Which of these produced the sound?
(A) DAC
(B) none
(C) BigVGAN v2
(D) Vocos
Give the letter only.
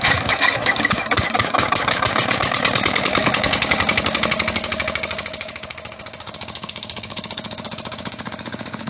A